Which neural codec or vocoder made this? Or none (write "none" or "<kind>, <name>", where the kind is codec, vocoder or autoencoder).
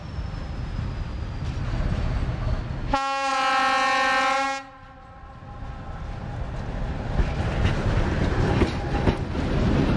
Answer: none